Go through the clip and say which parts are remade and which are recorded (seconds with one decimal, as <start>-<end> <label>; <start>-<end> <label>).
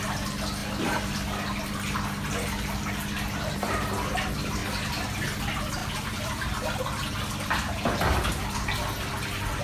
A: 0.0-5.8 recorded; 5.8-6.4 remade; 6.4-9.6 recorded